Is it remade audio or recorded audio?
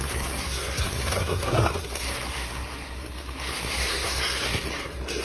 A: remade